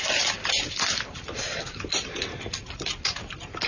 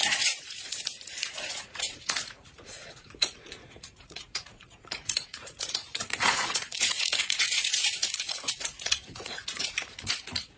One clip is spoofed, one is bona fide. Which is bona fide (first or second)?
first